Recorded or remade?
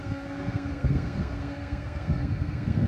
remade